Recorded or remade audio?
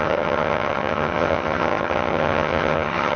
remade